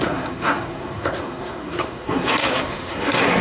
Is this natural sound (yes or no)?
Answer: no